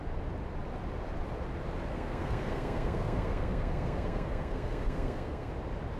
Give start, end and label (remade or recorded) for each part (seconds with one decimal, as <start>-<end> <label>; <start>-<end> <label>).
0.0-1.9 recorded; 1.9-5.5 remade; 5.5-6.0 recorded